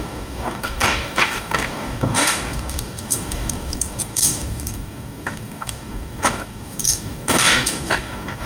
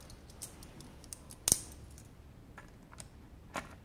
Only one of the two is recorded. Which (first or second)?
second